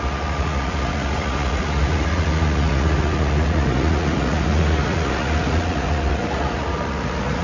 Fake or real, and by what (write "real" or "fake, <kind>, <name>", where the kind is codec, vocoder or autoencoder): fake, vocoder, Vocos